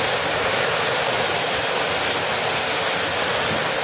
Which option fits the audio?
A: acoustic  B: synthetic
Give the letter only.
A